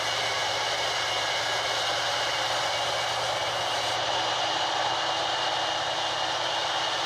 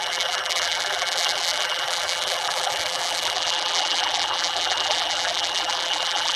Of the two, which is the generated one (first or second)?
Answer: second